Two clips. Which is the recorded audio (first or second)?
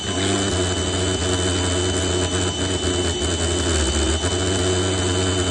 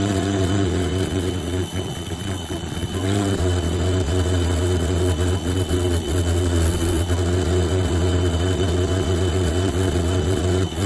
first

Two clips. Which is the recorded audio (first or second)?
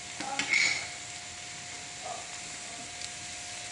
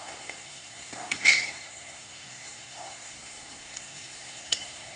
first